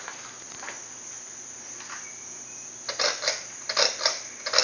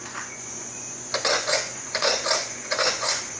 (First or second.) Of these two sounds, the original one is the first